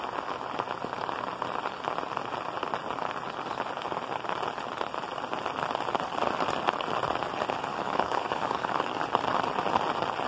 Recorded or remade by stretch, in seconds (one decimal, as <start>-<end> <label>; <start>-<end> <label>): 0.0-7.7 recorded; 7.7-9.0 remade; 9.0-10.3 recorded